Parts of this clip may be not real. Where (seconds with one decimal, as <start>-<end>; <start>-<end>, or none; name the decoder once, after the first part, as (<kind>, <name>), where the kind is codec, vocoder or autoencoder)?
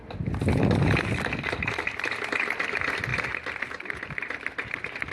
none